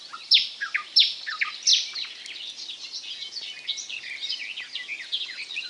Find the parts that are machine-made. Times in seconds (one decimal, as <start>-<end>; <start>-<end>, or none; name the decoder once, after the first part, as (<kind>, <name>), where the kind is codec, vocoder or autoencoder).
none